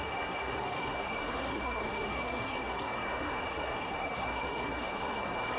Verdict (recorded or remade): remade